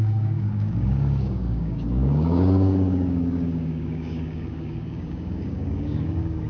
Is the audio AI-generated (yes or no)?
yes